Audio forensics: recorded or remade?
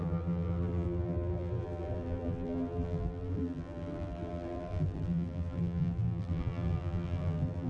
remade